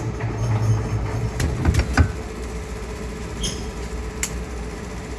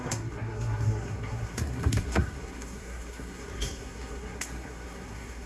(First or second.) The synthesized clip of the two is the second